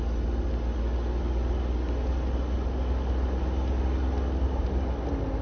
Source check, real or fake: real